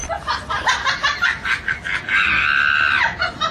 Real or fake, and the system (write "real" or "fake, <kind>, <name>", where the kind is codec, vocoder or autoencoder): real